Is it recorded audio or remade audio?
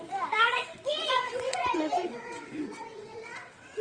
remade